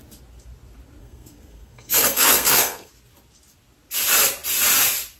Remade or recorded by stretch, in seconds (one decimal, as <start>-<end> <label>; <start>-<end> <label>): 0.0-1.0 recorded; 1.0-2.9 remade; 2.9-5.2 recorded